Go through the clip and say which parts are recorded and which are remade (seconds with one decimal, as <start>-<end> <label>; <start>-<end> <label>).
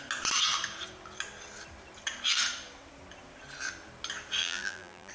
0.0-4.4 recorded; 4.4-5.1 remade